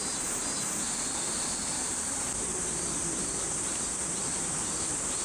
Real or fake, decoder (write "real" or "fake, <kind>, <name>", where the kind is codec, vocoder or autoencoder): real